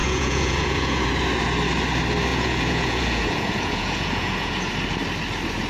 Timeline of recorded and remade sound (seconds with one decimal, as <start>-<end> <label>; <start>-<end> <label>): 0.0-1.1 remade; 1.1-2.3 recorded; 2.3-4.7 remade; 4.7-5.7 recorded